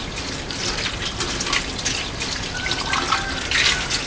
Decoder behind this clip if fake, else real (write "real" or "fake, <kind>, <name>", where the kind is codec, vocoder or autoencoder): real